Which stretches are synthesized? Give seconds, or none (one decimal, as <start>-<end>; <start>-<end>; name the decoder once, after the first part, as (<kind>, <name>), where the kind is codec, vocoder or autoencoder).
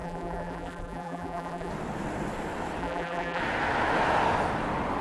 0.0-1.7 (vocoder, BigVGAN v2); 2.8-3.4